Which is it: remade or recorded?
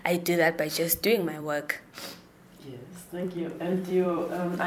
remade